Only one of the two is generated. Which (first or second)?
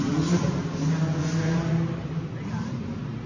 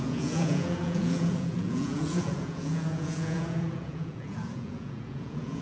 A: second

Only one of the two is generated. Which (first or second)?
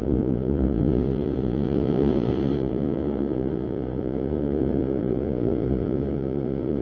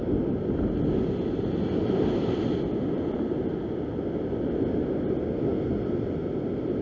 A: first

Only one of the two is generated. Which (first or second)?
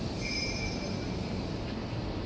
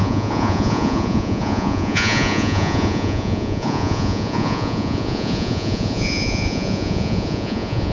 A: second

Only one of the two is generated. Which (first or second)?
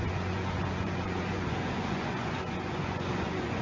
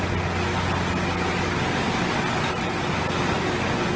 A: first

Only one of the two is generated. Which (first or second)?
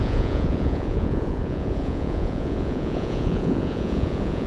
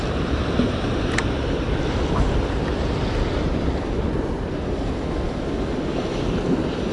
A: first